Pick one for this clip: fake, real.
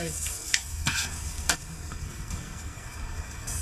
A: fake